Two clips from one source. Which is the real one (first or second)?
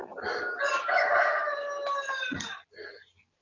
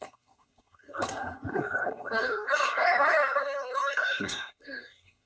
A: first